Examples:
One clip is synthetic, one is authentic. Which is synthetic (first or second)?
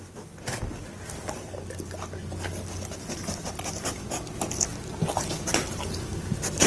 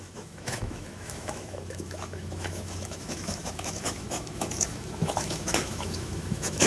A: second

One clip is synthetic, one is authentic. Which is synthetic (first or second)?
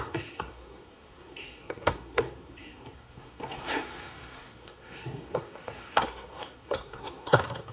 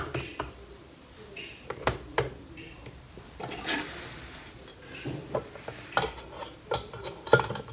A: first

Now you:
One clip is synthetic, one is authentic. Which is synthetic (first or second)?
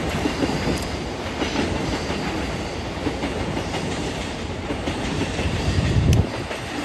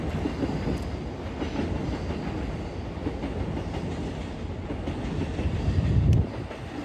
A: first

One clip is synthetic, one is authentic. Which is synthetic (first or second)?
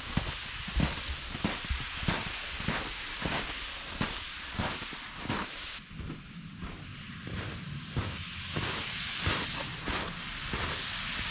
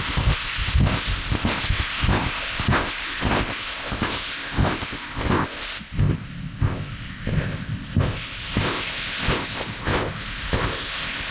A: second